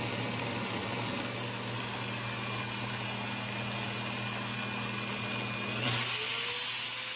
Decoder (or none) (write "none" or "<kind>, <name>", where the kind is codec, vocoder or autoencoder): none